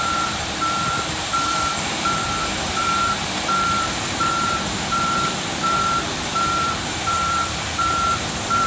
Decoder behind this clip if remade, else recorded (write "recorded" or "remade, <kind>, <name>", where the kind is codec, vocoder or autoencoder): remade, vocoder, BigVGAN v2